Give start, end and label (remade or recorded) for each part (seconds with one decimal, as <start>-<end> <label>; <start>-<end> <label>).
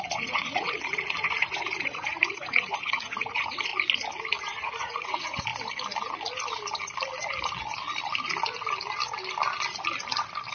0.0-3.7 remade; 3.7-4.3 recorded; 4.3-5.5 remade; 5.5-10.5 recorded